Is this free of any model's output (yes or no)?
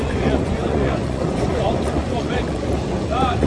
no